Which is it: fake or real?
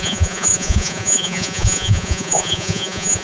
fake